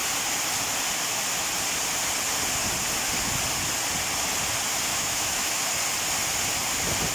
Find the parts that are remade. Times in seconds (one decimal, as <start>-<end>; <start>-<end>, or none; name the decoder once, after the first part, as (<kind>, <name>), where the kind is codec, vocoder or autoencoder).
4.9-5.6 (autoencoder, DAC-VAE)